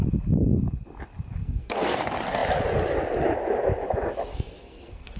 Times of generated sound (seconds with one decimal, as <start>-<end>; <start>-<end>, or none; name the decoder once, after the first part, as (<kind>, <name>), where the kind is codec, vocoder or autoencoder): 1.4-2.0 (codec, SNAC); 4.3-5.2